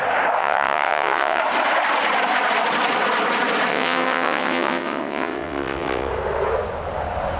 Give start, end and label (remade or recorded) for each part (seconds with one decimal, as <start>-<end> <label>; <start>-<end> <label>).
0.0-0.4 recorded; 0.4-1.4 remade; 1.4-3.7 recorded; 3.7-6.1 remade; 6.1-7.4 recorded